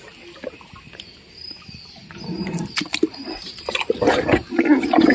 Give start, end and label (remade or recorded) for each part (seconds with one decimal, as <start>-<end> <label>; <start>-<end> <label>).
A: 0.0-2.0 recorded; 2.0-4.6 remade; 4.6-5.1 recorded